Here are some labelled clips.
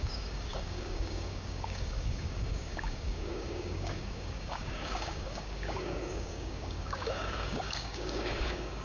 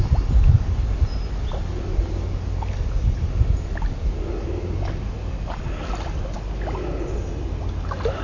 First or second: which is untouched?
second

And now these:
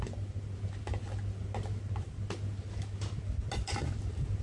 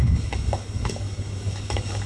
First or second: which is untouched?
first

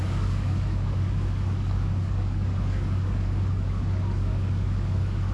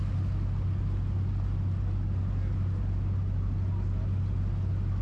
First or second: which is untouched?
second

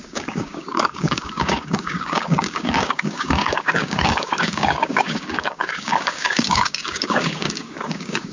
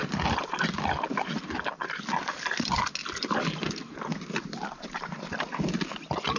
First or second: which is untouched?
second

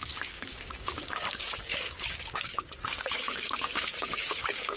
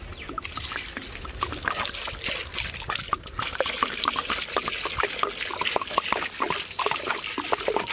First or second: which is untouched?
second